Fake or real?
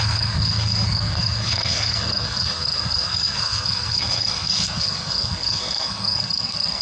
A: fake